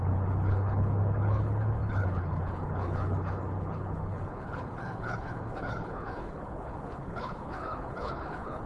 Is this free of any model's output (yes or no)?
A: no